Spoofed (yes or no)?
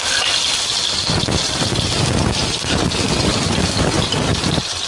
no